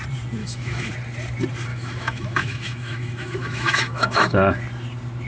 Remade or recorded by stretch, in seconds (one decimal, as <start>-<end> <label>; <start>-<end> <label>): 0.0-0.4 recorded; 0.4-0.9 remade; 0.9-1.7 recorded; 1.7-4.6 remade; 4.6-5.3 recorded